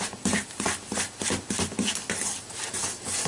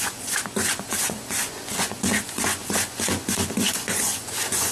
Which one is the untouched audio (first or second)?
first